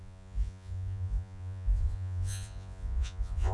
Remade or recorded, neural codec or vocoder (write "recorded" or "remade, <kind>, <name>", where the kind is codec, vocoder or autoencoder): remade, vocoder, Vocos